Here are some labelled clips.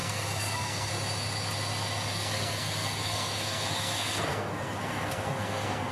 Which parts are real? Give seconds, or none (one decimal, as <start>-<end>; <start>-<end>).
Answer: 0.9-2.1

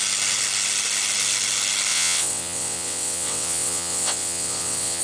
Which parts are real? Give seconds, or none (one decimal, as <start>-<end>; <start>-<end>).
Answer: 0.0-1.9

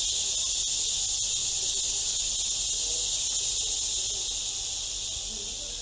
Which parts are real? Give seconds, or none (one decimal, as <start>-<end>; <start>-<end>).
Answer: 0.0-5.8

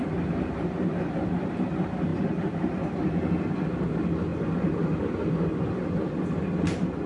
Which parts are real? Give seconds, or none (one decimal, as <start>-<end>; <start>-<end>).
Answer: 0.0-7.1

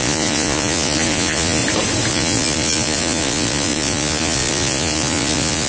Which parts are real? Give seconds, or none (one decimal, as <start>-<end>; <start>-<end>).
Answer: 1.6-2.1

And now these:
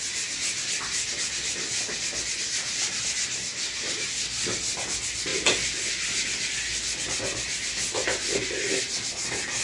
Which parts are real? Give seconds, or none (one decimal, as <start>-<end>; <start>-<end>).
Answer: 0.0-9.6

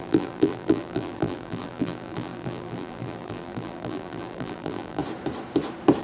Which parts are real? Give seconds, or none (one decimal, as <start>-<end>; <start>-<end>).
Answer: 5.0-6.0